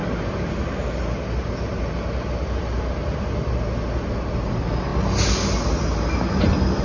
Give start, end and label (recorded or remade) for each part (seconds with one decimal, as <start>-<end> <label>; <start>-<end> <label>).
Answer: 0.0-6.8 recorded